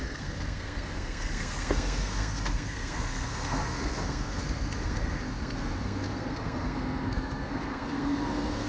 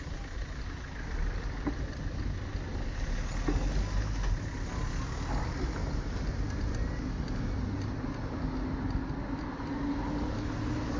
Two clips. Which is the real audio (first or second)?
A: second